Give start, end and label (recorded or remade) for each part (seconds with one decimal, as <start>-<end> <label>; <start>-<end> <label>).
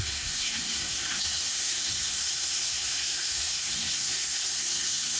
0.0-5.2 remade